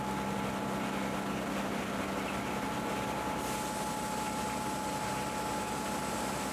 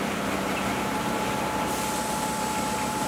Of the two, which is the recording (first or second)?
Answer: first